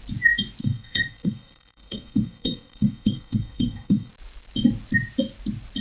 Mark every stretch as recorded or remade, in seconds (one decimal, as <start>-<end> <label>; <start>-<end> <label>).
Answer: 0.0-0.6 recorded; 0.6-4.1 remade; 4.1-5.8 recorded